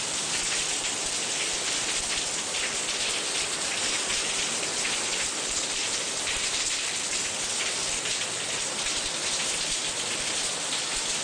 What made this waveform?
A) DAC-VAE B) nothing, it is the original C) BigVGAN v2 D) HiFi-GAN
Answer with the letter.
C